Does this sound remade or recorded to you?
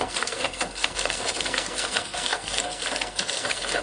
remade